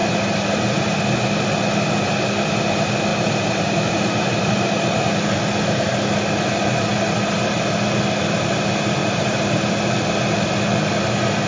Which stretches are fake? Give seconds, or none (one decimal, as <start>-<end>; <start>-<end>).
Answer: 0.0-1.0; 3.1-5.1; 9.0-9.8